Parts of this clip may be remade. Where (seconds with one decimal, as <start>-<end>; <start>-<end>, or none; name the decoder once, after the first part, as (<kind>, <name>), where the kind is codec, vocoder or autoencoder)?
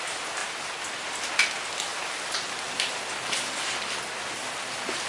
none